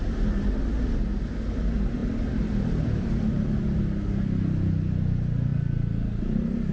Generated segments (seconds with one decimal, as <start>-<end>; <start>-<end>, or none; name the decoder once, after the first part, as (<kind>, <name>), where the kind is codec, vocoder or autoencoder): 2.0-3.8 (vocoder, BigVGAN v2)